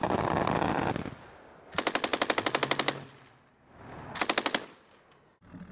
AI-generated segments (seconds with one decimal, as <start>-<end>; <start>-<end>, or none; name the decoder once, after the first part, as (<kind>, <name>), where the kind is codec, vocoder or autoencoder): none